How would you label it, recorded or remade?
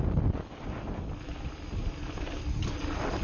recorded